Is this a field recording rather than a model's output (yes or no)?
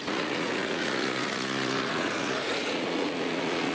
no